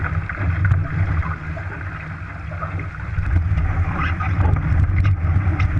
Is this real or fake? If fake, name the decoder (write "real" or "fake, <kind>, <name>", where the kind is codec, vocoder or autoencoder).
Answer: real